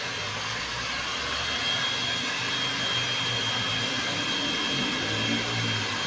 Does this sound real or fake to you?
real